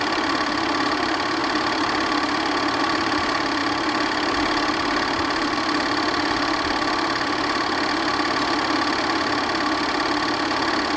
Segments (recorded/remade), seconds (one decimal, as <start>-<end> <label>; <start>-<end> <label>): 0.0-11.0 recorded